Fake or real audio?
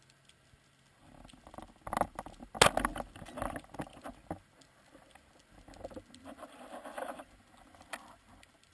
real